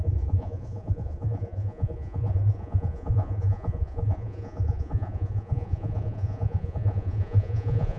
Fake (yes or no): yes